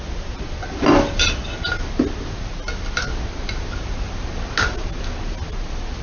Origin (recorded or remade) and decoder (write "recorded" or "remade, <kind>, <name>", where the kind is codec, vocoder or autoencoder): recorded